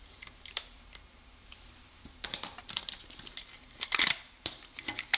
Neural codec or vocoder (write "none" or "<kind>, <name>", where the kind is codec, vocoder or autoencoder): vocoder, BigVGAN v2